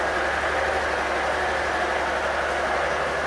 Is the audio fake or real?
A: real